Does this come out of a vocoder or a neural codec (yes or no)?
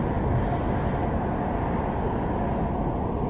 no